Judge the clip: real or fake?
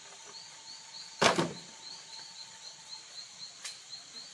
real